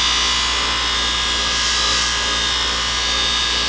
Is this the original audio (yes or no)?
yes